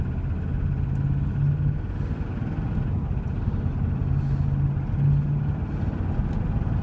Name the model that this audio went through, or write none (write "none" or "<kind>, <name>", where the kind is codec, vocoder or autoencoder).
none